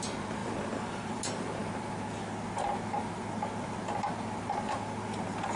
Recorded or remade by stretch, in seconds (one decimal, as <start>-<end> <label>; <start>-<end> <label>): 0.0-0.4 recorded; 0.4-1.2 remade; 1.2-5.6 recorded